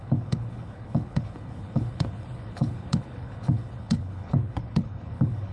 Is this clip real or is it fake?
fake